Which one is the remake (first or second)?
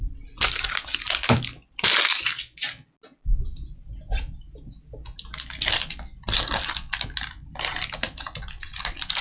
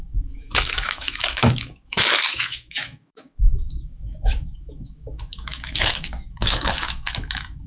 second